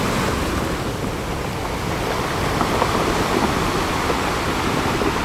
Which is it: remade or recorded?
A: recorded